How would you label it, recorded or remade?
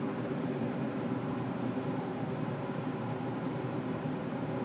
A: remade